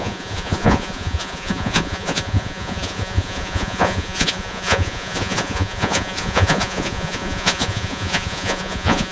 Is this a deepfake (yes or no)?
yes